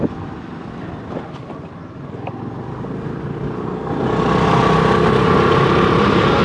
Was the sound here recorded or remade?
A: recorded